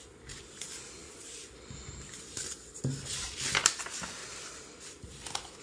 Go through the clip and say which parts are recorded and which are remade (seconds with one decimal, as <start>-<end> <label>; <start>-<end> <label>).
0.0-5.6 recorded